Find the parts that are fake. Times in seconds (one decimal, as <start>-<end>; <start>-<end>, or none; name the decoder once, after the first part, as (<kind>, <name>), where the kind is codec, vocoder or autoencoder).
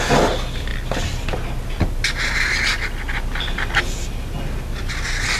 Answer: none